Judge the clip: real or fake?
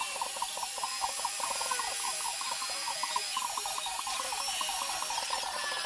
real